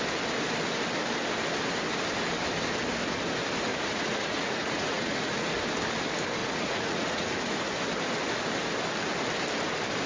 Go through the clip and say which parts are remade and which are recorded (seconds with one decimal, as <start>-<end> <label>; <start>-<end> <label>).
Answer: 0.0-3.7 recorded; 3.7-5.5 remade; 5.5-6.4 recorded; 6.4-7.3 remade; 7.3-10.1 recorded